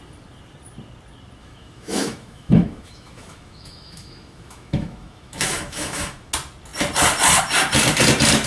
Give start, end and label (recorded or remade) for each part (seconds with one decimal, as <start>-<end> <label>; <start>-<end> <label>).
0.0-1.4 recorded; 1.4-6.3 remade; 6.3-8.5 recorded